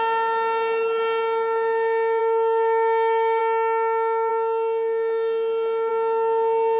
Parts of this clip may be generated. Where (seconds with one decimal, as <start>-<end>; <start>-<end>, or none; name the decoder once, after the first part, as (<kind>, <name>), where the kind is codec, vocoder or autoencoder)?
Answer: 2.2-3.4 (autoencoder, DAC-VAE)